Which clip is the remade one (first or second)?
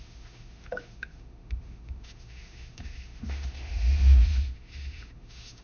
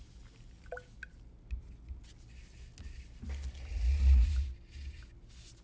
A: first